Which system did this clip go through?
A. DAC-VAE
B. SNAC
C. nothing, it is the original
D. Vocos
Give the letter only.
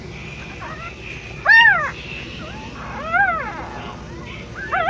C